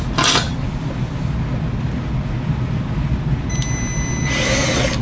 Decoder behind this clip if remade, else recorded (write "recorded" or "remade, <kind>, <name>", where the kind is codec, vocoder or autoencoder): recorded